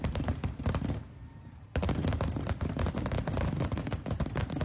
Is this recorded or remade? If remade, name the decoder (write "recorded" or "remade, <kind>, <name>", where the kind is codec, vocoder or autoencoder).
remade, vocoder, BigVGAN v2